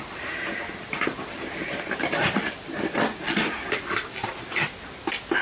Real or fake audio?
real